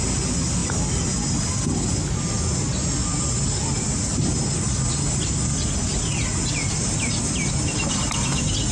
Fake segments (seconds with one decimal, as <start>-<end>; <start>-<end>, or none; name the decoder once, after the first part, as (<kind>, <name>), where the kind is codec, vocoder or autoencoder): none